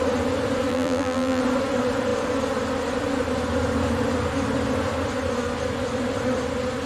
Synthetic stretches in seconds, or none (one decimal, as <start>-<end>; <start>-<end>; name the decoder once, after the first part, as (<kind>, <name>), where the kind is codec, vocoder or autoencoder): 0.7-1.4 (vocoder, BigVGAN v2)